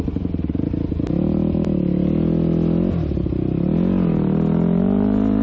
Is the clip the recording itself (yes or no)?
yes